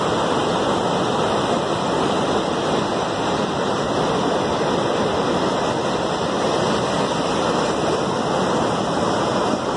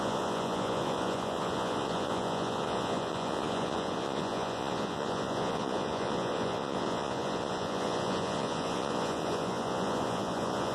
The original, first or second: first